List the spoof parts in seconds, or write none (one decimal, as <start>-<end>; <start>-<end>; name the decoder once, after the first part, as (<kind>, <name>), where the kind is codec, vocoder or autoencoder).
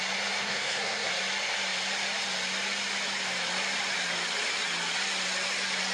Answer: 0.4-1.1 (codec, SNAC)